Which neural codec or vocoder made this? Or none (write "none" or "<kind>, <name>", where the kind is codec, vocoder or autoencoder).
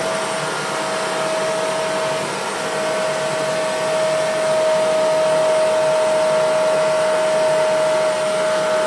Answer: none